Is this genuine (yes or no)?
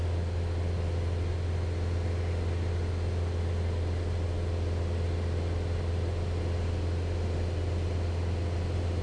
yes